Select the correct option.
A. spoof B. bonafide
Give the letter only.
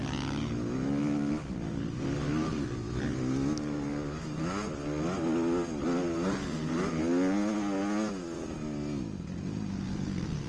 B